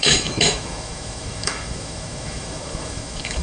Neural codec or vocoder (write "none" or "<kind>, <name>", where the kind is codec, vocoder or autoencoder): autoencoder, DAC-VAE